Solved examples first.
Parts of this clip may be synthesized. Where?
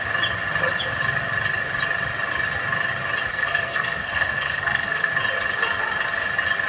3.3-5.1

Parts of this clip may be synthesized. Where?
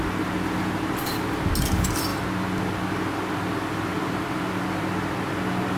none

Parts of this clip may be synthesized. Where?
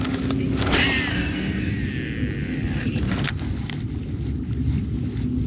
1.1-1.7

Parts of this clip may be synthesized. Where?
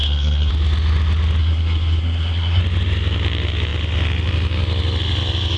0.0-0.5; 1.4-2.6